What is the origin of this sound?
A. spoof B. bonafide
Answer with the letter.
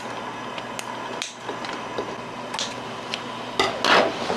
B